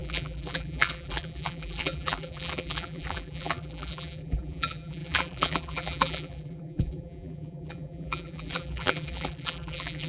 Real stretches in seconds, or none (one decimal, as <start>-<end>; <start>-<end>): none

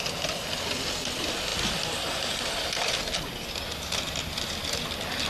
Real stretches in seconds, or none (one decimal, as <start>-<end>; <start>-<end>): 0.0-5.3